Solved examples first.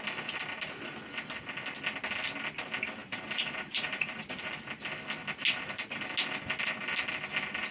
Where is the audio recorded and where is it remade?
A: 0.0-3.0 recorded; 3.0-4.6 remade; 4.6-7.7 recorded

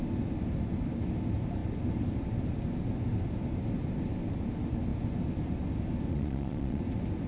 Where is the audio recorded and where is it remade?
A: 0.0-6.1 recorded; 6.1-6.8 remade; 6.8-7.3 recorded

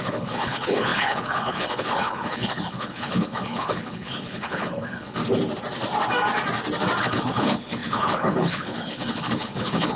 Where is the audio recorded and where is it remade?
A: 0.0-5.2 remade; 5.2-7.0 recorded; 7.0-9.9 remade

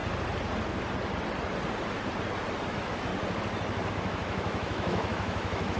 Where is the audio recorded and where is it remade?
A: 0.0-2.7 recorded; 2.7-3.1 remade; 3.1-3.9 recorded; 3.9-5.8 remade